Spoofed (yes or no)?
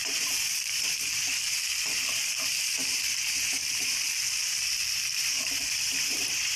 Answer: yes